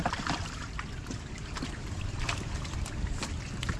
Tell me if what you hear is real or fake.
fake